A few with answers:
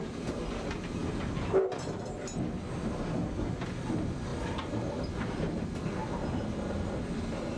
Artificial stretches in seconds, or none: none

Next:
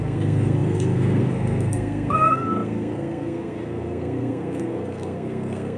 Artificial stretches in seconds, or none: 0.0-5.8

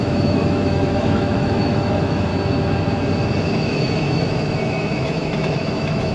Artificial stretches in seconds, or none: 0.0-2.3; 3.5-6.1

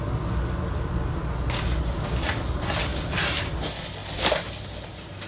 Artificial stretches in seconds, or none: none

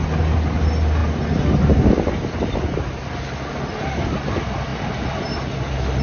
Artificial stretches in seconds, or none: none

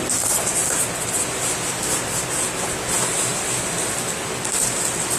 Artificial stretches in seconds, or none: none

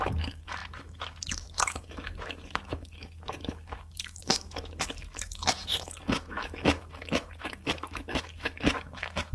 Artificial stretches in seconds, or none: 0.0-9.3

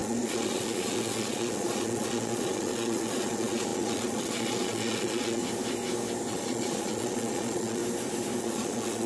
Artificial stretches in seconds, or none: 0.0-5.4; 6.3-7.8; 8.4-9.1